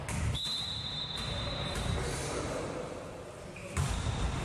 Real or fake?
real